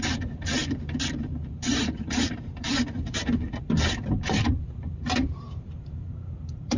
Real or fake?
fake